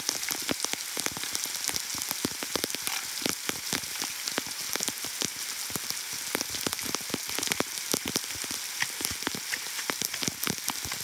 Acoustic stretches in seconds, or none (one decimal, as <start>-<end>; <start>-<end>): 0.0-11.0